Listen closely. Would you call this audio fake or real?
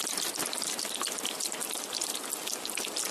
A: real